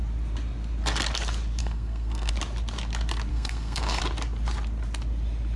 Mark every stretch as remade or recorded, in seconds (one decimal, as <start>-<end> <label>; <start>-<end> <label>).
0.0-1.6 recorded; 1.6-2.3 remade; 2.3-3.3 recorded; 3.3-4.0 remade; 4.0-5.6 recorded